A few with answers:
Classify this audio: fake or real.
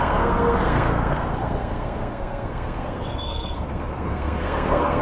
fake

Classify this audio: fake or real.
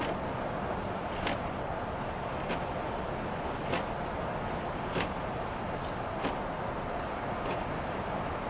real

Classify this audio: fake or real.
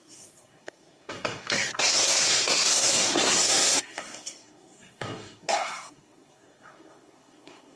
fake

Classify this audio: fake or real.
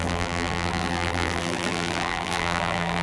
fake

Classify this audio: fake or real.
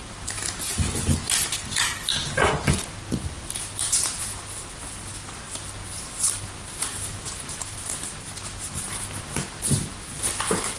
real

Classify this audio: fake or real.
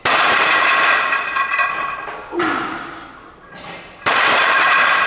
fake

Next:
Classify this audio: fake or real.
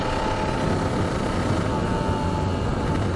real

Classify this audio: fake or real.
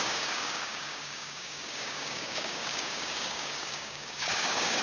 fake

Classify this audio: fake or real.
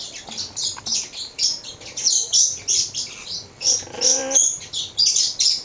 real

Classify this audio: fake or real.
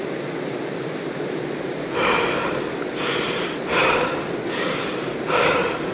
real